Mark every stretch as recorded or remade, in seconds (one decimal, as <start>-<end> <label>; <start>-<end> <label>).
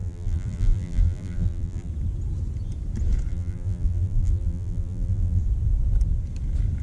0.0-1.9 remade; 1.9-3.3 recorded; 3.3-5.4 remade; 5.4-6.8 recorded